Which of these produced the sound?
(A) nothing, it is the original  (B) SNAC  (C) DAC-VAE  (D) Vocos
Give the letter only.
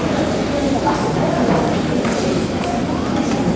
A